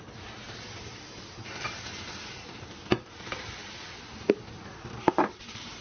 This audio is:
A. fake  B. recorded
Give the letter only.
A